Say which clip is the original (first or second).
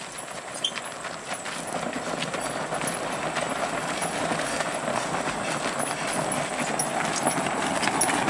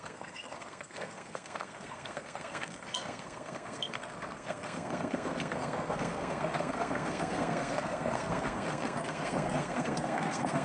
first